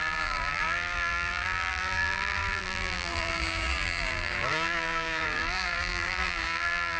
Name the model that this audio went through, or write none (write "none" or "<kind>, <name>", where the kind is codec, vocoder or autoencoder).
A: vocoder, BigVGAN v2